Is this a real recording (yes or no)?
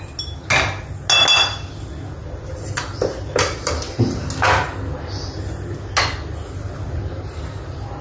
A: yes